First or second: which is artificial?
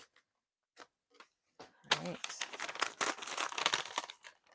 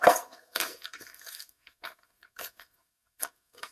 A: second